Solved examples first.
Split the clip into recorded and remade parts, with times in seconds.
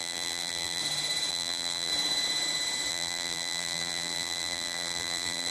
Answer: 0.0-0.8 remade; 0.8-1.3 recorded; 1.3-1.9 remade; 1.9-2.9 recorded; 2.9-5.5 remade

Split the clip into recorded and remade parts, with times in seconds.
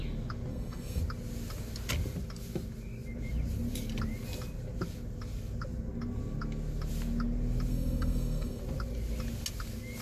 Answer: 0.0-0.5 recorded; 0.5-1.0 remade; 1.0-7.7 recorded; 7.7-8.6 remade; 8.6-10.0 recorded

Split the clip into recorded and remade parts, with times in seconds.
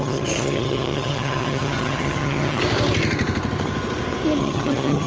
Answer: 0.0-2.6 remade; 2.6-4.4 recorded; 4.4-5.1 remade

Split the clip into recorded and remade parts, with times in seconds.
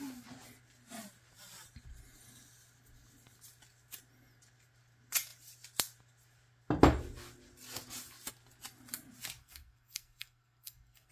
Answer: 0.0-9.4 recorded; 9.4-11.1 remade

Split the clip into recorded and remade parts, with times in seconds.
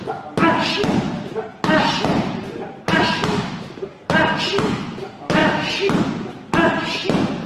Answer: 0.0-1.5 recorded; 1.5-4.4 remade; 4.4-5.4 recorded; 5.4-6.0 remade; 6.0-7.5 recorded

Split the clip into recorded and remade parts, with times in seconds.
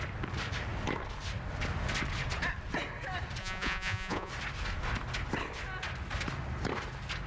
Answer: 0.0-3.4 recorded; 3.4-4.3 remade; 4.3-7.3 recorded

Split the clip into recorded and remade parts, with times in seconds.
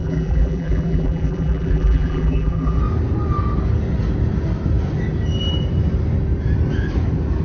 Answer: 0.0-2.8 remade; 2.8-7.4 recorded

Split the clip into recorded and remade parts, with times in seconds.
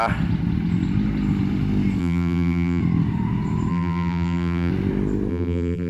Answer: 0.0-2.0 recorded; 2.0-2.8 remade; 2.8-3.7 recorded; 3.7-4.7 remade; 4.7-5.3 recorded; 5.3-5.9 remade